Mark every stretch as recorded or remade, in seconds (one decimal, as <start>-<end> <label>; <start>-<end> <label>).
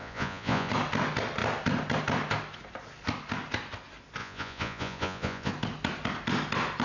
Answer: 0.0-0.7 remade; 0.7-4.2 recorded; 4.2-5.5 remade; 5.5-6.8 recorded